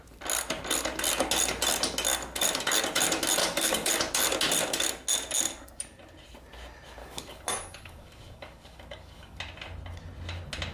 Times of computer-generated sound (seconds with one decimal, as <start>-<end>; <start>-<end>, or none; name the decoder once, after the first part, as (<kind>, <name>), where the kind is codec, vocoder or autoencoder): 3.4-3.9 (codec, DAC); 7.0-9.4